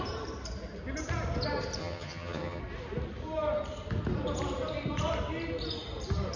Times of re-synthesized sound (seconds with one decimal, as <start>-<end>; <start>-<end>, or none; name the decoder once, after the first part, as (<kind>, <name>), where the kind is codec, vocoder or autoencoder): 1.8-2.6 (vocoder, HiFi-GAN)